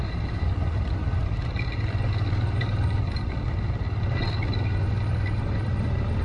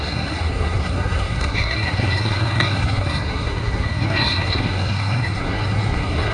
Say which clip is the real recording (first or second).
first